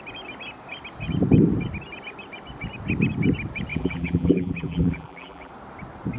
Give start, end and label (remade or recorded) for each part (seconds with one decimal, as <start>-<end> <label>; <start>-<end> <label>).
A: 0.0-3.7 recorded; 3.7-5.5 remade; 5.5-6.2 recorded